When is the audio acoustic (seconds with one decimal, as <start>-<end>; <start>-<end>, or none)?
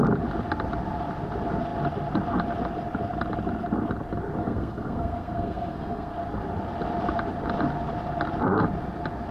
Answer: 0.0-4.4; 6.1-9.3